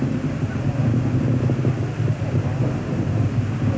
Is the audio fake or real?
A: real